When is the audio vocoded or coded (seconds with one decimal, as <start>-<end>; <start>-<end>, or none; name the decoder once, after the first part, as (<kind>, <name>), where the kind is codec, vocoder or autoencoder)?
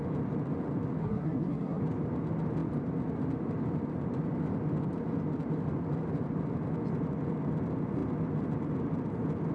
1.0-1.8 (codec, SNAC)